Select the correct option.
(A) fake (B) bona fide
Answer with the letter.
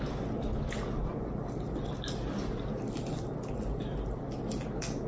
B